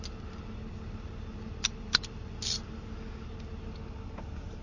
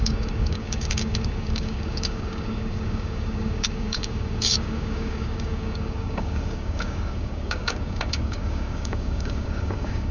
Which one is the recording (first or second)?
first